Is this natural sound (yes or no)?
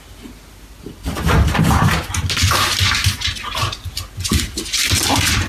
yes